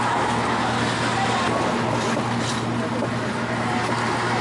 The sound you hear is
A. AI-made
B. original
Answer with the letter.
B